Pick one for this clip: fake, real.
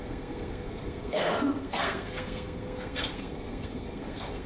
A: fake